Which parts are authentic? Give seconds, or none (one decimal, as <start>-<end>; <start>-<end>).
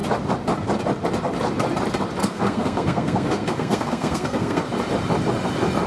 0.0-2.2; 4.7-5.9